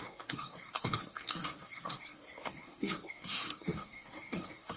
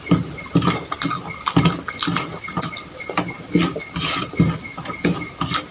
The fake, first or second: first